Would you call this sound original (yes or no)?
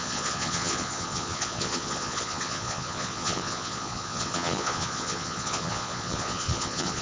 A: no